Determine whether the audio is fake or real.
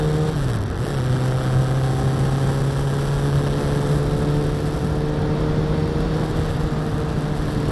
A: real